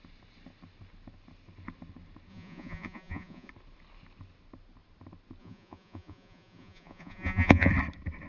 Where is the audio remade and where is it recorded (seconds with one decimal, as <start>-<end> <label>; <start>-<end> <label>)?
0.0-2.3 recorded; 2.3-3.5 remade; 3.5-5.4 recorded; 5.4-7.7 remade; 7.7-8.3 recorded